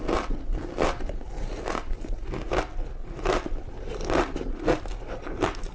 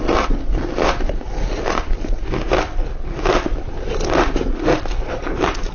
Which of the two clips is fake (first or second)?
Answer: second